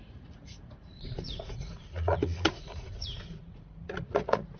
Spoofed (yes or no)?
yes